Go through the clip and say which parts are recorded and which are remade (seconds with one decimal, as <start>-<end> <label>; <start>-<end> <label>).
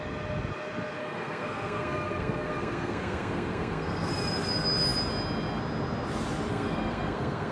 0.0-1.0 recorded; 1.0-4.1 remade; 4.1-6.5 recorded; 6.5-7.5 remade